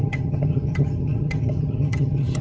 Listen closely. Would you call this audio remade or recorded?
remade